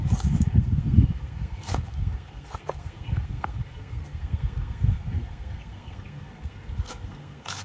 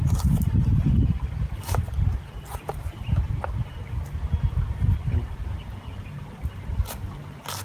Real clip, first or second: second